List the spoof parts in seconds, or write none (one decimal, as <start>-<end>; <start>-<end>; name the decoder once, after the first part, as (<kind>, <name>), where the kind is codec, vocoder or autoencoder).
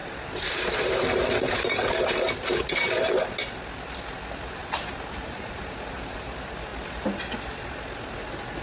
0.0-0.6 (vocoder, BigVGAN v2); 4.6-5.6